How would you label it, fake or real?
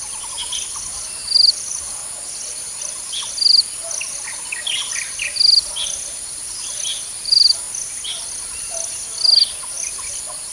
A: real